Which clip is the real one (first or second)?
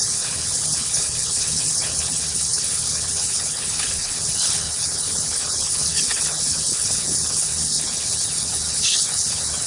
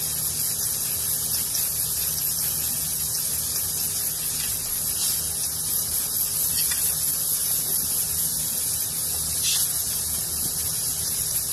second